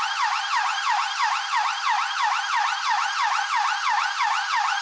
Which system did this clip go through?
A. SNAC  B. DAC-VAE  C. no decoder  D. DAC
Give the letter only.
C